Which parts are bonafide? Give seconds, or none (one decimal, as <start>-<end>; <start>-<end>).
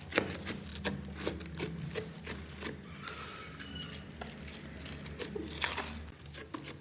0.0-6.8